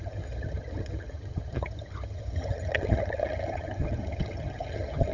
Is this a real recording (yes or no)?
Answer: no